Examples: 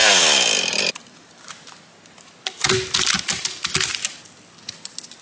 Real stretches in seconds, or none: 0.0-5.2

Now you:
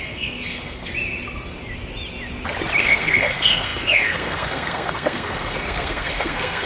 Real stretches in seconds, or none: 0.9-2.8